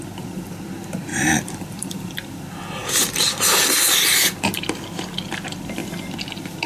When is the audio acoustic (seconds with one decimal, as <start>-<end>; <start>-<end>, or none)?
0.0-1.1; 2.1-2.8; 4.2-6.7

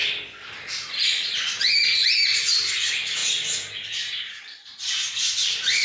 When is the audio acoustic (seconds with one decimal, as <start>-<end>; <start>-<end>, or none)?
0.0-5.8

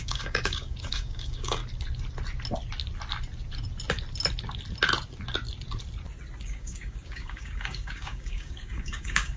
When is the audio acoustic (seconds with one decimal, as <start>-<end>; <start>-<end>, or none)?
1.6-6.4

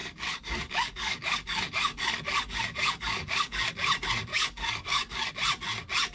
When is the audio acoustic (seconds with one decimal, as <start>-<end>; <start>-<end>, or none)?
3.7-4.3; 5.3-6.1